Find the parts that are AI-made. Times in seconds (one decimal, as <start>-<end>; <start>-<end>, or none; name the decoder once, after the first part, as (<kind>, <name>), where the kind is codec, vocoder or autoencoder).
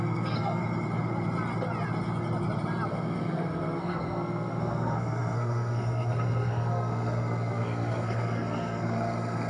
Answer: 0.0-0.6 (codec, SNAC); 2.9-9.5